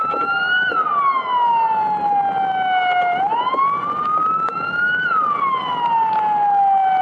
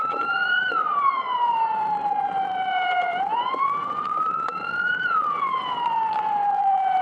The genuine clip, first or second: first